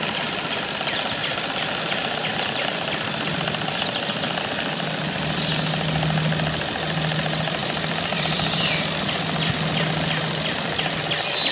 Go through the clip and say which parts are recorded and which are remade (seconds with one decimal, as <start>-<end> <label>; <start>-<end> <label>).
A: 0.0-1.2 recorded; 1.2-1.8 remade; 1.8-7.6 recorded; 7.6-8.2 remade; 8.2-11.5 recorded